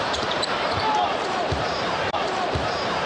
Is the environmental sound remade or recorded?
remade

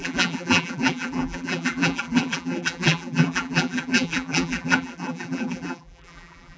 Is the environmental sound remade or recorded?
remade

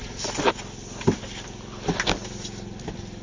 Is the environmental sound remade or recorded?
remade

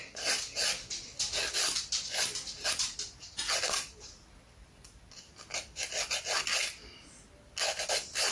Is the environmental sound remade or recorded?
recorded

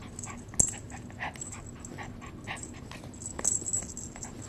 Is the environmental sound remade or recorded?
recorded